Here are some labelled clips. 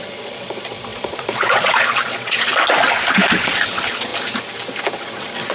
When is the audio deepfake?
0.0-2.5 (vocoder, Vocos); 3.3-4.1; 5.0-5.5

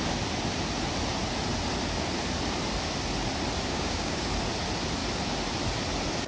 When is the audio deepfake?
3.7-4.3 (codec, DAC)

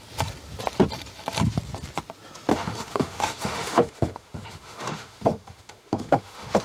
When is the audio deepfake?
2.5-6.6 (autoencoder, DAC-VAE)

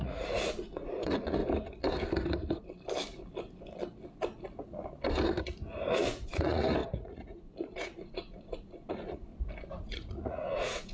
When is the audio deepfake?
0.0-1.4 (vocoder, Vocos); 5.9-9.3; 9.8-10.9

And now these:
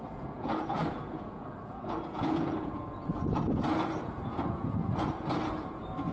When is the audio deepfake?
0.0-6.1 (vocoder, Vocos)

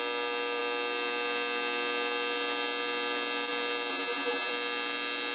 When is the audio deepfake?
3.9-4.5 (vocoder, Vocos)

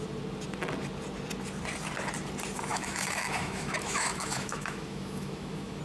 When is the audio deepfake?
2.7-5.8 (autoencoder, DAC-VAE)